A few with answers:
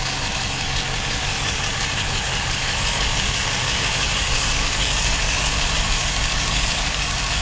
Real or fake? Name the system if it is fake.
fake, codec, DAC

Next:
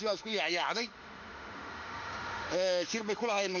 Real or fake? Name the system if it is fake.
fake, autoencoder, DAC-VAE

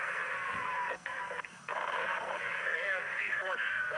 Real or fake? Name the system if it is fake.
fake, codec, SNAC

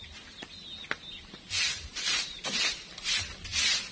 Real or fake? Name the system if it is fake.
real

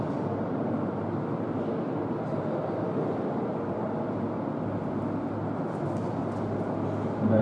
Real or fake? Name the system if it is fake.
real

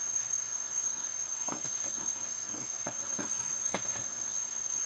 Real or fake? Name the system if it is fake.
fake, codec, SNAC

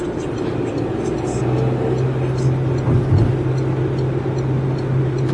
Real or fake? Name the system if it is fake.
real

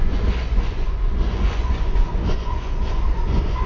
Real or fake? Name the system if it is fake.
fake, vocoder, Vocos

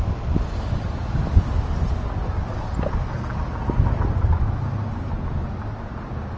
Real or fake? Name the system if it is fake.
real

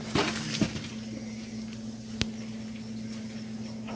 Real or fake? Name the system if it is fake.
real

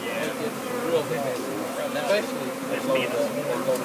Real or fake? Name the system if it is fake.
real